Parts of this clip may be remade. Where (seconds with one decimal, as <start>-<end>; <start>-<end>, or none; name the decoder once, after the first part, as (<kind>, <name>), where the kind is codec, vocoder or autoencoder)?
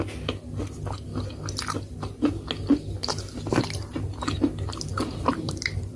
4.9-6.0 (vocoder, BigVGAN v2)